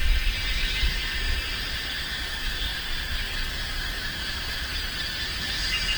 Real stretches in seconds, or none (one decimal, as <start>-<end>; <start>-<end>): 0.0-0.5; 1.0-2.1; 2.7-3.3; 4.7-5.4